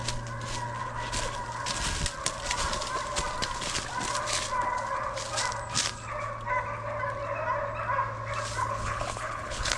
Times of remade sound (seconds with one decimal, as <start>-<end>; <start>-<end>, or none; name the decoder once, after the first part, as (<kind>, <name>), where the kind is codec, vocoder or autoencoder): 8.6-9.8 (codec, HILCodec)